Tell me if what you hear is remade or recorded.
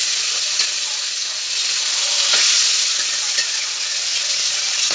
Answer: remade